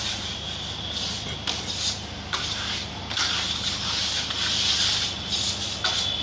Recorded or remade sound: recorded